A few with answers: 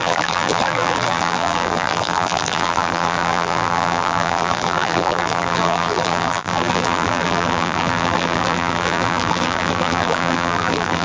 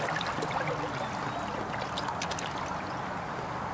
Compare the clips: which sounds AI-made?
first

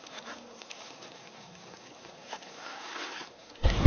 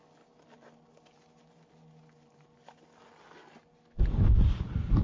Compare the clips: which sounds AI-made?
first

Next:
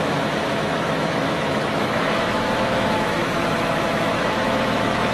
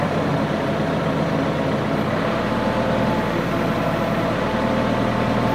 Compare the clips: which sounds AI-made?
first